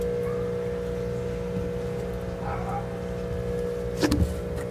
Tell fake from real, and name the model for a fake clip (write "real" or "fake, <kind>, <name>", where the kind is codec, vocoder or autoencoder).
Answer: real